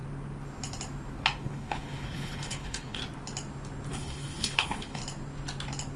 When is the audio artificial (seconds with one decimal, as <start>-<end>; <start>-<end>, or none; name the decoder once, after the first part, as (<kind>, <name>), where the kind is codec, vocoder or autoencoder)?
1.4-3.0 (codec, HILCodec); 3.9-5.0